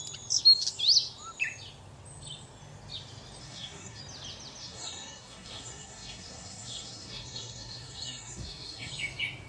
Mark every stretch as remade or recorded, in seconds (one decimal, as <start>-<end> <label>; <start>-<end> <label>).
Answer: 0.0-3.4 recorded; 3.4-4.0 remade; 4.0-4.6 recorded; 4.6-8.9 remade; 8.9-9.5 recorded